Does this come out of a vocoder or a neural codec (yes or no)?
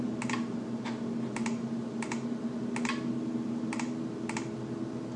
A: no